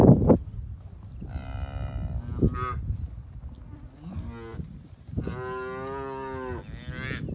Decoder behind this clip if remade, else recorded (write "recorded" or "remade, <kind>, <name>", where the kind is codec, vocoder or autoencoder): recorded